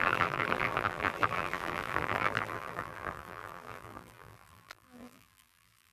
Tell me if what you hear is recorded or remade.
remade